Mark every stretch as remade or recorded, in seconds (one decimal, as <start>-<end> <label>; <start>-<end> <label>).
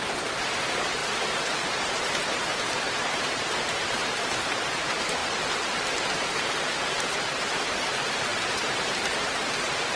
0.0-5.2 remade; 5.2-7.0 recorded; 7.0-10.0 remade